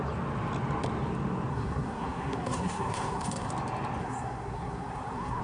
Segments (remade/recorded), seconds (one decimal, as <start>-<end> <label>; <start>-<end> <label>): 0.0-1.5 recorded; 1.5-3.5 remade; 3.5-4.0 recorded; 4.0-5.4 remade